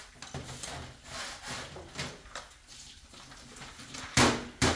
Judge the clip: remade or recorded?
recorded